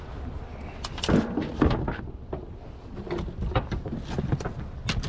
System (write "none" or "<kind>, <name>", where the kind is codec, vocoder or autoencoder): none